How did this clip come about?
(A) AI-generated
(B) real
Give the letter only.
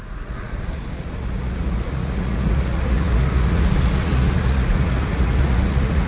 A